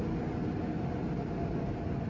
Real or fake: real